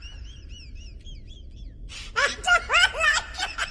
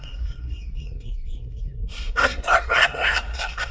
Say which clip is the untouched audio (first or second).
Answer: first